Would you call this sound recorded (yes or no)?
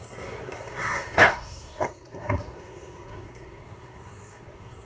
no